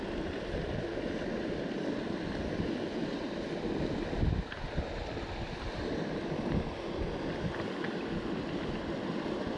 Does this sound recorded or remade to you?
recorded